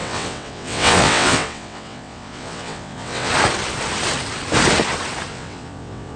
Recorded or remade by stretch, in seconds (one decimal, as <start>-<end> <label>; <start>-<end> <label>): 0.0-3.3 remade; 3.3-5.3 recorded; 5.3-6.2 remade